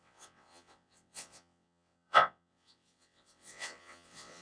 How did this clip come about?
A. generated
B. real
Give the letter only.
A